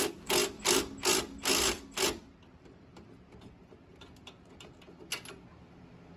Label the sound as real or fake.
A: real